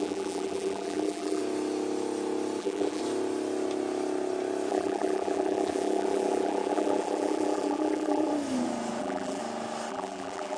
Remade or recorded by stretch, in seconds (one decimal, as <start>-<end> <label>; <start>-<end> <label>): 0.0-1.4 remade; 1.4-2.6 recorded; 2.6-3.0 remade; 3.0-4.7 recorded; 4.7-8.3 remade; 8.3-9.0 recorded; 9.0-9.4 remade; 9.4-9.9 recorded; 9.9-10.6 remade